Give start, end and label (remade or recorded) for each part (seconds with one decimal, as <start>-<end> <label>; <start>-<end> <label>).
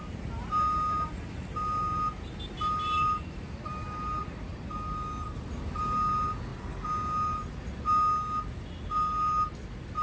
0.0-10.0 recorded